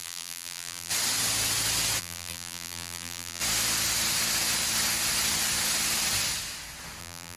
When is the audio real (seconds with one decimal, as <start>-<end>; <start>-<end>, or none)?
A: 0.9-2.0; 3.4-7.0